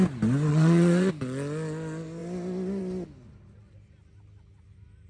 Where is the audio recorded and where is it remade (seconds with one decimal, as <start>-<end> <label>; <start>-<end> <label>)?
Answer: 0.0-0.5 recorded; 0.5-1.1 remade; 1.1-5.1 recorded